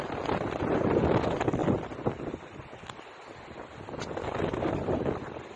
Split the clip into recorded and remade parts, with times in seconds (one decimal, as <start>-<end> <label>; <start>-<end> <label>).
0.0-5.6 recorded

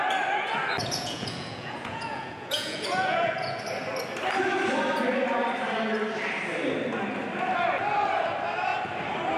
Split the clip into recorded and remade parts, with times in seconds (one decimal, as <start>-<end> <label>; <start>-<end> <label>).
0.0-0.8 recorded; 0.8-3.6 remade; 3.6-9.4 recorded

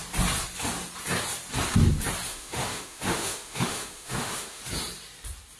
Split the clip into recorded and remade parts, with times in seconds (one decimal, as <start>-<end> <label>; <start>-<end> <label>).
0.0-2.3 recorded; 2.3-4.6 remade; 4.6-5.6 recorded

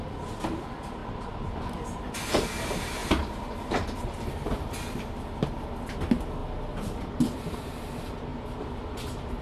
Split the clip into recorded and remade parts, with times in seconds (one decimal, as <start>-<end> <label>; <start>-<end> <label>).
0.0-6.4 recorded; 6.4-7.8 remade; 7.8-8.3 recorded; 8.3-9.4 remade

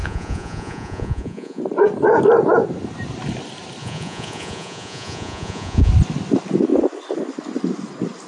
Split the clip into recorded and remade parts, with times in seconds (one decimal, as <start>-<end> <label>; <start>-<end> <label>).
0.0-1.6 remade; 1.6-3.8 recorded; 3.8-5.9 remade; 5.9-8.3 recorded